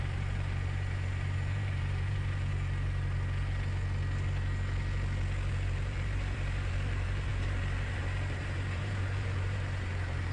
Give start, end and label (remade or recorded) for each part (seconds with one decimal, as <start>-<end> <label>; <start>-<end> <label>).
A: 0.0-2.5 remade; 2.5-5.5 recorded; 5.5-10.3 remade

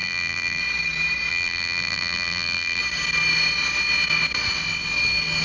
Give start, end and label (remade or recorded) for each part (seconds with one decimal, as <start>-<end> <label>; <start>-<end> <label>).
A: 0.0-0.6 remade; 0.6-1.3 recorded; 1.3-2.8 remade; 2.8-5.4 recorded

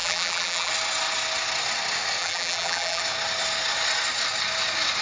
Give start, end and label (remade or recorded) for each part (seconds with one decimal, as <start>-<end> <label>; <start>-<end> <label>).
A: 0.0-0.7 remade; 0.7-2.2 recorded; 2.2-3.0 remade; 3.0-5.0 recorded

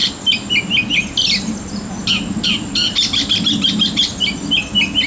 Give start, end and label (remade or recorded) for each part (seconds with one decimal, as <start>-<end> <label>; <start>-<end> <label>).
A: 0.0-5.1 recorded

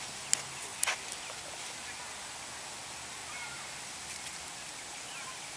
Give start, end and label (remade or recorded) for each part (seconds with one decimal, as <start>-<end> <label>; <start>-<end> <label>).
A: 0.0-3.2 recorded; 3.2-4.5 remade; 4.5-4.9 recorded; 4.9-5.6 remade

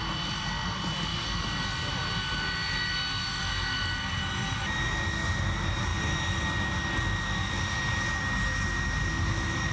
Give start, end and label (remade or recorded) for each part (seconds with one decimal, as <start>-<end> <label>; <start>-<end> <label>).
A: 0.0-9.7 recorded